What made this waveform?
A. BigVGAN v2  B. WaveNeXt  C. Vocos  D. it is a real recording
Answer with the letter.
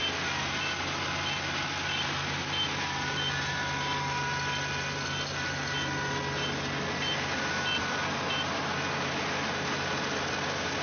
D